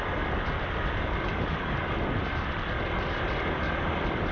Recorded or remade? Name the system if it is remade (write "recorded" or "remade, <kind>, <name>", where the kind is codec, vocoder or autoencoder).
remade, vocoder, BigVGAN v2